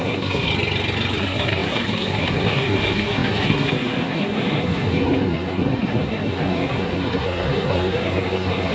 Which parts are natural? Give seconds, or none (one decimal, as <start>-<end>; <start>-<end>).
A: 0.5-1.2